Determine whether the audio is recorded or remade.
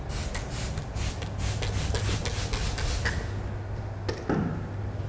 recorded